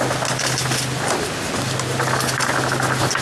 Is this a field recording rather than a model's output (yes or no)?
yes